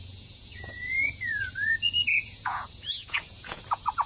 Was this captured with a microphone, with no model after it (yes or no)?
no